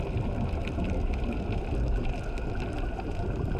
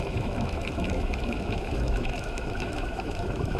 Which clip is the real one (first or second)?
first